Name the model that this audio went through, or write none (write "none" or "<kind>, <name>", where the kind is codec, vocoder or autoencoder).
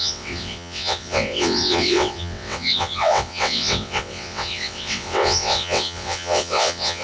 vocoder, WaveNeXt